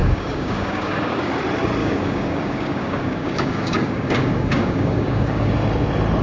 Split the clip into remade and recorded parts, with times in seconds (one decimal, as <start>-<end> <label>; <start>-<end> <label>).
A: 0.0-1.3 remade; 1.3-1.8 recorded; 1.8-5.5 remade; 5.5-6.2 recorded